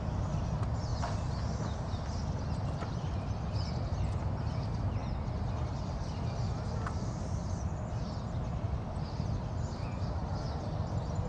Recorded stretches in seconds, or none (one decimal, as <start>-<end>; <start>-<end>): 0.0-11.3